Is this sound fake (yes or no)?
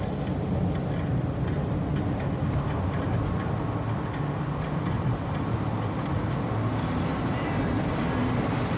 no